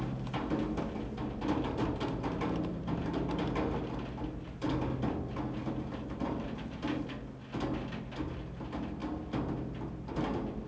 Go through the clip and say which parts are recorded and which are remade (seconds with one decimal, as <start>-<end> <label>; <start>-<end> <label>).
0.0-2.7 recorded; 2.7-3.4 remade; 3.4-5.6 recorded; 5.6-6.8 remade; 6.8-10.7 recorded